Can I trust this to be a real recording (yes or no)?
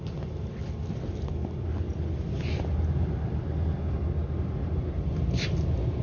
yes